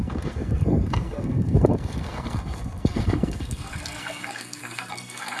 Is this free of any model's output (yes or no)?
no